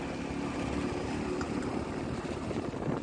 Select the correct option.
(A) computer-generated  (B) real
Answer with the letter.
B